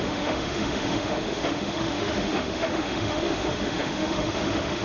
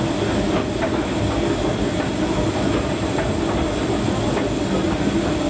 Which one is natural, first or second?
second